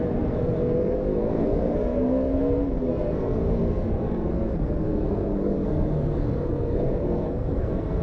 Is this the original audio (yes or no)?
no